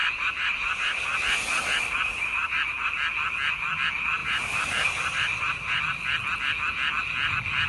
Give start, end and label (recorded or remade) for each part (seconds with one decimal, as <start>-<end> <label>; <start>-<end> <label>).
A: 0.0-2.9 remade; 2.9-4.2 recorded; 4.2-5.8 remade; 5.8-7.7 recorded